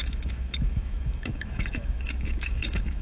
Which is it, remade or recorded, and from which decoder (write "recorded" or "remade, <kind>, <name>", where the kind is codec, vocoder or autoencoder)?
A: remade, autoencoder, DAC-VAE